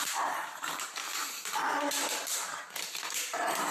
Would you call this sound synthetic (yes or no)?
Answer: yes